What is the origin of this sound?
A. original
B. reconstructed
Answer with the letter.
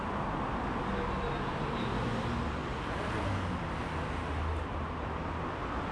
A